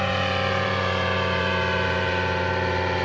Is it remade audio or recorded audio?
remade